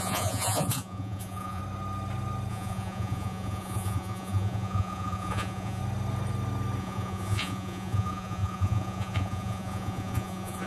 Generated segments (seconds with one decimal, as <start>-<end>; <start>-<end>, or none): 0.0-1.6; 2.5-5.8; 6.8-10.7

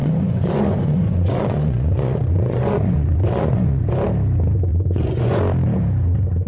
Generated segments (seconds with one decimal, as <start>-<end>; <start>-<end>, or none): 0.0-3.9; 4.7-5.4

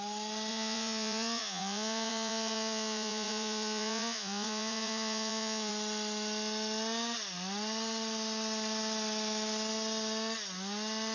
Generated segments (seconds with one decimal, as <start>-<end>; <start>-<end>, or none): 0.5-5.7

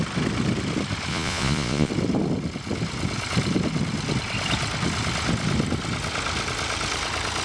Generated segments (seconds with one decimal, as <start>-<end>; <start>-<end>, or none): 1.1-1.9

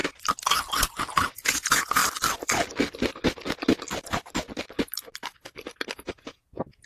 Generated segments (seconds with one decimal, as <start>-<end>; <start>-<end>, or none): 1.3-2.0; 6.1-6.9